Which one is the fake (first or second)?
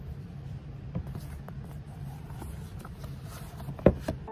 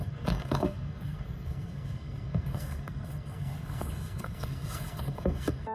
second